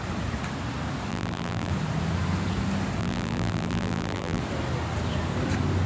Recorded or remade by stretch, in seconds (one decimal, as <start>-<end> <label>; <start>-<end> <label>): 0.0-1.1 recorded; 1.1-1.7 remade; 1.7-3.0 recorded; 3.0-4.4 remade; 4.4-5.9 recorded